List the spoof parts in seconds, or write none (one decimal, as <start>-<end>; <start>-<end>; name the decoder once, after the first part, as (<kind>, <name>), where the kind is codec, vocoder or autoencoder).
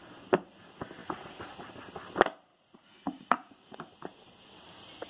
1.0-1.7 (vocoder, Vocos); 2.5-3.8